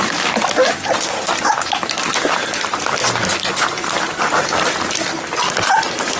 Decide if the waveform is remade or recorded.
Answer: recorded